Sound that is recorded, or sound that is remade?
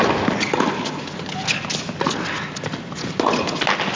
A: recorded